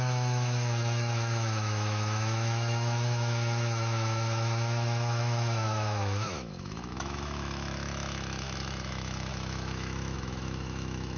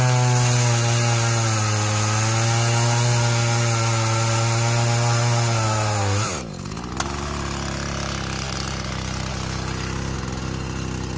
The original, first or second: second